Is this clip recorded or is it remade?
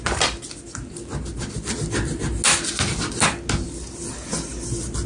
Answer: recorded